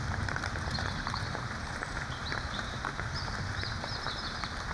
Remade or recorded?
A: remade